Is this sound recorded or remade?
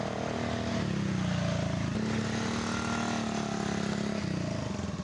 recorded